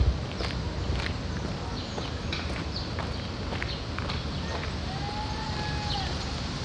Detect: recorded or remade recorded